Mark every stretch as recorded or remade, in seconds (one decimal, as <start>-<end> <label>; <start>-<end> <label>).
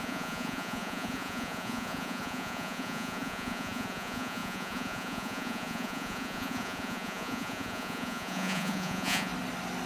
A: 0.0-9.3 remade; 9.3-9.9 recorded